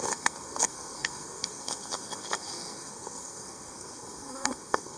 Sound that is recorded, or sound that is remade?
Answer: remade